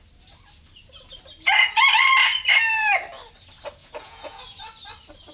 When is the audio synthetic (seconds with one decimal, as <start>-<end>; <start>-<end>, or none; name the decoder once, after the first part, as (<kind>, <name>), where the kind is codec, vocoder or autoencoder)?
3.8-4.4 (vocoder, Vocos)